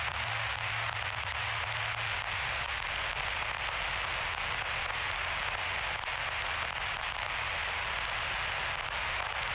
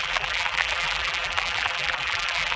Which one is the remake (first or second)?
second